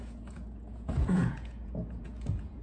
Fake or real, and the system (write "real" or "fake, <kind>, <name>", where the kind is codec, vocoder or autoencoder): fake, vocoder, Vocos